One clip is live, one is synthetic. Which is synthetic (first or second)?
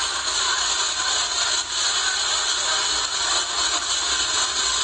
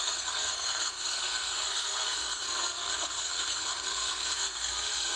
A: second